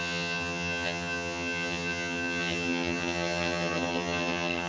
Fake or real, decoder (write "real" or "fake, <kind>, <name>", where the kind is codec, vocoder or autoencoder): fake, vocoder, HiFi-GAN